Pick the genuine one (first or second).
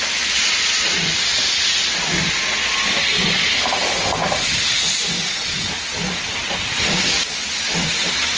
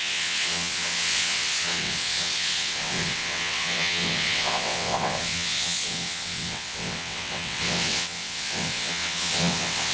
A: first